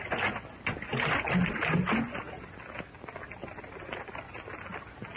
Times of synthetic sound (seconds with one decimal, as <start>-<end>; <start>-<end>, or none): none